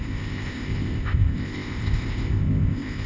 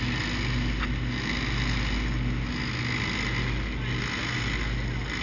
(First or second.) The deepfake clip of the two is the first